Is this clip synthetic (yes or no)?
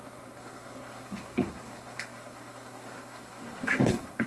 yes